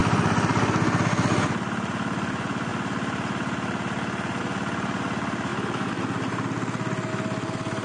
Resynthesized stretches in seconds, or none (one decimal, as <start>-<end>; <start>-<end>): none